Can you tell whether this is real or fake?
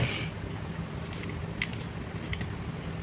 real